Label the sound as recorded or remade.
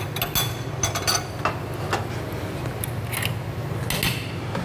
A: recorded